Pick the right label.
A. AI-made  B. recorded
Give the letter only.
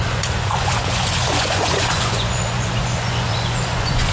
A